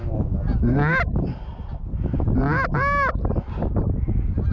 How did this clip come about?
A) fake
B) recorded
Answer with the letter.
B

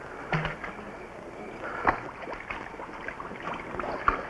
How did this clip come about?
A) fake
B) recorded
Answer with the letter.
B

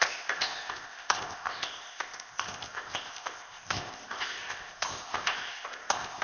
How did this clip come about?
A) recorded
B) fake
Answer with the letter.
B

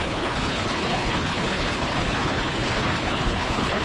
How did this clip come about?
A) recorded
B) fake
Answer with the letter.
B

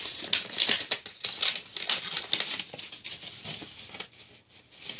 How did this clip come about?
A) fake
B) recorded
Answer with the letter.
B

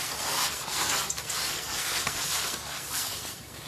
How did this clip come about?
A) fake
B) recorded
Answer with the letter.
A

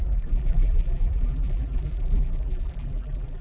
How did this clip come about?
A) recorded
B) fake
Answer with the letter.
B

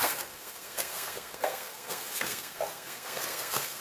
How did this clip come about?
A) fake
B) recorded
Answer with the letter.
A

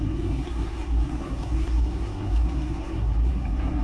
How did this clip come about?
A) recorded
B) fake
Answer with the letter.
B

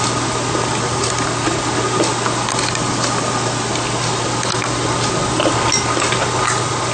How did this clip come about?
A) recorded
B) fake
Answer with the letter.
A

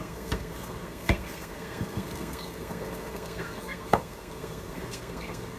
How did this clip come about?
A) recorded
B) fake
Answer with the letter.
B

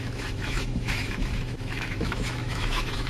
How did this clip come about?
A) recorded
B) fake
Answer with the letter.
B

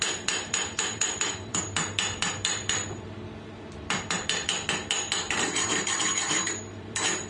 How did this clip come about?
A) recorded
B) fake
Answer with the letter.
B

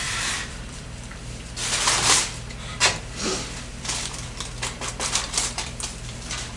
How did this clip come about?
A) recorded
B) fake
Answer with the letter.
B